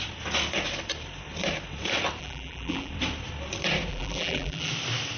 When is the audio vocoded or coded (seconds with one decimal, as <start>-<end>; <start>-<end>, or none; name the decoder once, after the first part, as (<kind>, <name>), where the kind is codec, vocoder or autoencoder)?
2.2-2.9 (vocoder, BigVGAN v2); 3.9-4.7